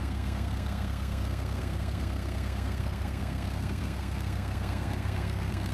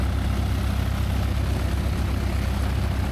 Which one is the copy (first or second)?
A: first